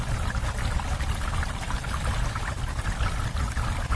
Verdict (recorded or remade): recorded